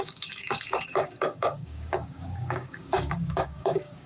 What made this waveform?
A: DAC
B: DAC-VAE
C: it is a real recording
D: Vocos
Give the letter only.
A